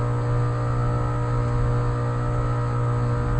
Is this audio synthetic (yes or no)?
no